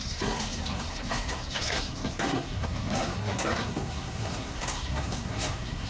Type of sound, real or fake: fake